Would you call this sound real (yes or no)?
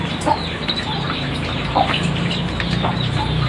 no